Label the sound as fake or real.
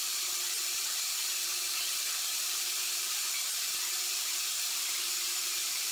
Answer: fake